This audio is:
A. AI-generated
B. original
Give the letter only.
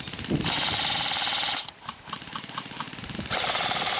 A